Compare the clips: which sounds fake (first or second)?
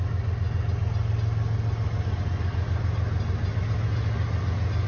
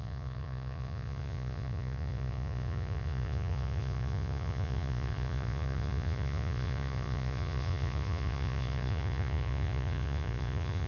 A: second